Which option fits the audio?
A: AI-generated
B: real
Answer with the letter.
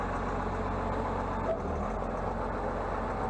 B